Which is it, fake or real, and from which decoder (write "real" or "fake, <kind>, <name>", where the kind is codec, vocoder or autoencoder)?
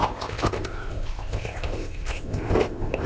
fake, codec, ZipCodec